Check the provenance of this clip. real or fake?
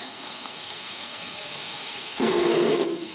fake